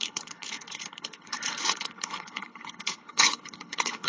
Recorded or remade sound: remade